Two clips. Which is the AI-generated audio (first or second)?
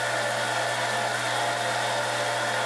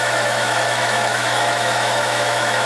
second